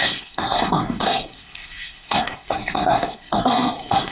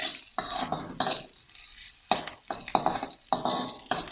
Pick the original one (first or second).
second